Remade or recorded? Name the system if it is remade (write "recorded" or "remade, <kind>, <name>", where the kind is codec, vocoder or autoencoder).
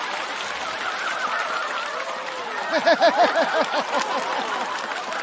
recorded